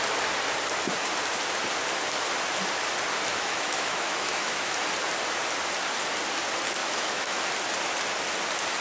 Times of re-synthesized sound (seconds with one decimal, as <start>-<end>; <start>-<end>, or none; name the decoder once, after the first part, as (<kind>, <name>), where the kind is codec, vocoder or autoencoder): 3.3-4.8 (autoencoder, DAC-VAE); 6.8-7.4